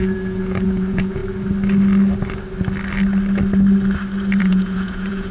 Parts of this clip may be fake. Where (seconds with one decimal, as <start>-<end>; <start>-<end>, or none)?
0.0-1.2; 4.4-5.3